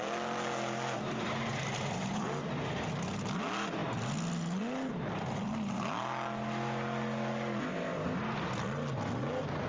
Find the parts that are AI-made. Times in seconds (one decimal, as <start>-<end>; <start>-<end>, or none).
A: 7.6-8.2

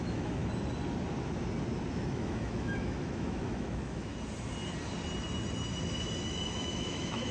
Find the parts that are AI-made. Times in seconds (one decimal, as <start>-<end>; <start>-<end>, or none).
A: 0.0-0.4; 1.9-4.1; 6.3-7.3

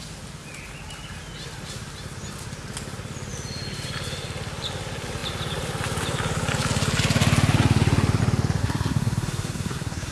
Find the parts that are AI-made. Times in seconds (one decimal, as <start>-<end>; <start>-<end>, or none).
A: 8.6-10.1

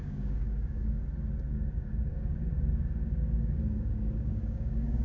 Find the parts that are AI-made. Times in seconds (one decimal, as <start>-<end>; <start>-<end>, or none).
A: 0.0-1.0; 1.5-5.0

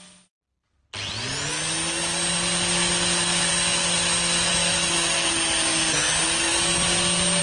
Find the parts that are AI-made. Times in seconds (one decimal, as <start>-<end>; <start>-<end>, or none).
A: none

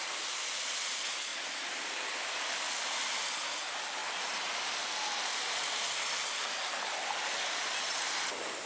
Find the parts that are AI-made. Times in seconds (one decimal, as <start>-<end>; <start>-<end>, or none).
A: 1.3-2.5

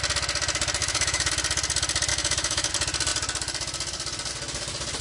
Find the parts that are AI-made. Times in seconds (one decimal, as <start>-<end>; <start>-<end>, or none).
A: 0.8-1.3; 2.1-2.7